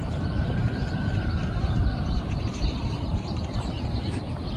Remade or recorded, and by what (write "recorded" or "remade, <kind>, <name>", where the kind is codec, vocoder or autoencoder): remade, vocoder, BigVGAN v2